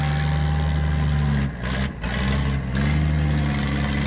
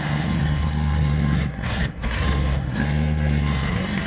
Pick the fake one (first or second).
second